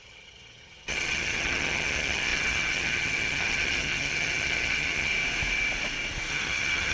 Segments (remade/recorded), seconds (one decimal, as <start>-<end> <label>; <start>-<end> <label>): 0.0-5.1 remade; 5.1-6.3 recorded; 6.3-6.9 remade